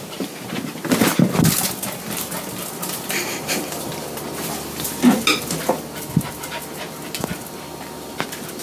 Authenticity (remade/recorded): recorded